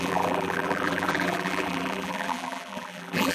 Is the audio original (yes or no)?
no